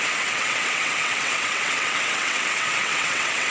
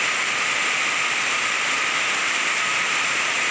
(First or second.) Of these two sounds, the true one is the second